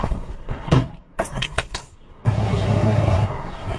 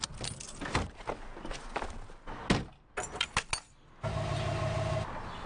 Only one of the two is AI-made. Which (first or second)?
first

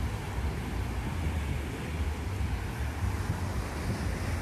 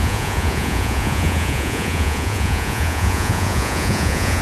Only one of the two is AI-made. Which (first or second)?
second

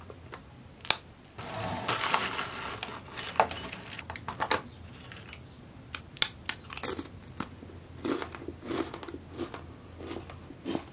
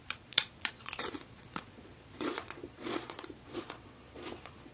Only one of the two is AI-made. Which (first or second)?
second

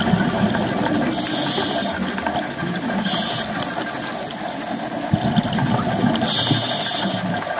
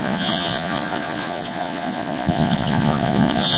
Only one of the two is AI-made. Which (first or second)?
second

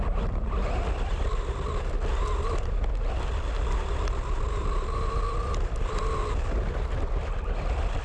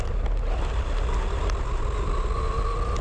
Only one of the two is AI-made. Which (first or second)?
first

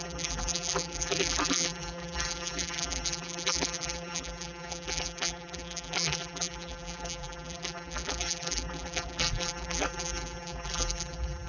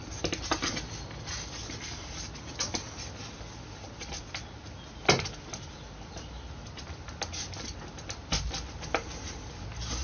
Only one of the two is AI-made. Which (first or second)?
first